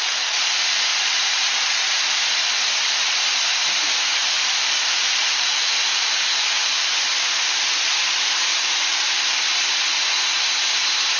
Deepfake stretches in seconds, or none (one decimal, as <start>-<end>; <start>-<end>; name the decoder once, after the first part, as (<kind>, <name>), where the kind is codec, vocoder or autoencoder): 0.9-3.1 (vocoder, BigVGAN v2); 4.2-5.7; 8.5-9.1